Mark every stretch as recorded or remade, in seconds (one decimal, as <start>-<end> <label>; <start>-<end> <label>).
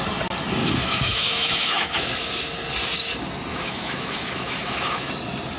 0.0-0.6 recorded; 0.6-2.1 remade; 2.1-3.5 recorded; 3.5-5.1 remade; 5.1-5.6 recorded